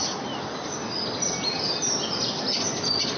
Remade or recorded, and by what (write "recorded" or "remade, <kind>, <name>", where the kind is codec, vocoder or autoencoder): recorded